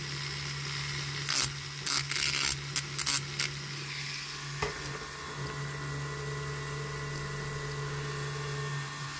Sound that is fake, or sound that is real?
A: real